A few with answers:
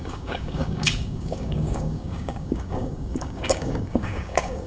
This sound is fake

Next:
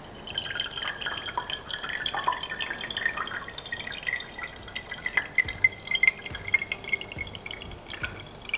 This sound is real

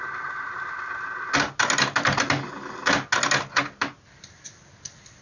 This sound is real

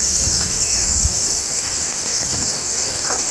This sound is fake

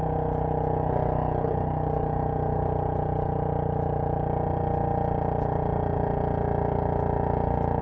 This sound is real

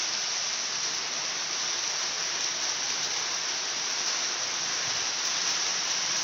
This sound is real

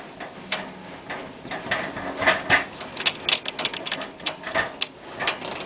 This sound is real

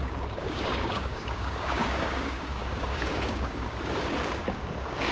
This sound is fake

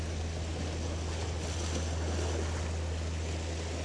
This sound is real